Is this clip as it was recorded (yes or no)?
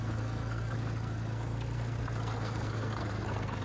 no